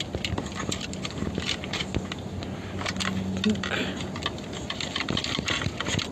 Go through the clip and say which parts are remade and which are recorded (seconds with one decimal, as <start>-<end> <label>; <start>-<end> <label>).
0.0-6.1 recorded